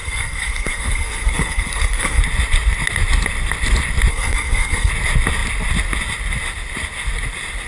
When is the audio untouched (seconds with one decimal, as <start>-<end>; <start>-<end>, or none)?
2.2-4.1; 4.9-7.7